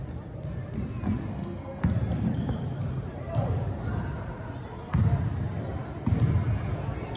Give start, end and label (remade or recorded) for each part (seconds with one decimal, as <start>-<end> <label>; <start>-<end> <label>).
0.0-1.3 recorded; 1.3-1.8 remade; 1.8-7.2 recorded